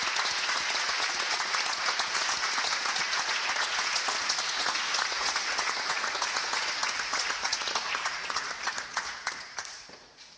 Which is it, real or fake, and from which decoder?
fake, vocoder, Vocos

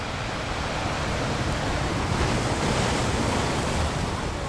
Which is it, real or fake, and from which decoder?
real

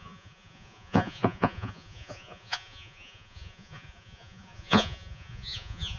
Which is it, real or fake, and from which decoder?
fake, vocoder, Vocos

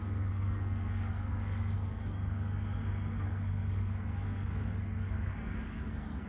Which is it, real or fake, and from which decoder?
fake, codec, SNAC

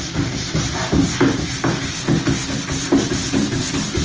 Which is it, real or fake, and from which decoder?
real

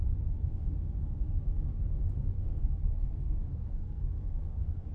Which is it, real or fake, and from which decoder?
fake, codec, SNAC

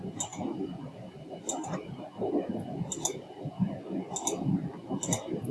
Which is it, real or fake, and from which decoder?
real